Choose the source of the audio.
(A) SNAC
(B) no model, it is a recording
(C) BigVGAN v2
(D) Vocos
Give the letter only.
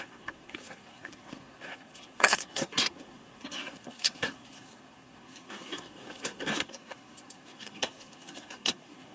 A